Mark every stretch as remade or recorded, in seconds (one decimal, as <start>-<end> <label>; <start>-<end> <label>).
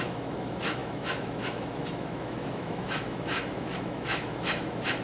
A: 0.0-5.0 remade